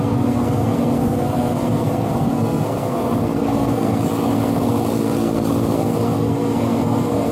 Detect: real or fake fake